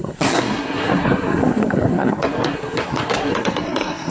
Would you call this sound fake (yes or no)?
yes